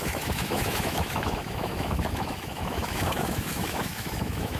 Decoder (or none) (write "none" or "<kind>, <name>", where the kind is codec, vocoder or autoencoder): autoencoder, DAC-VAE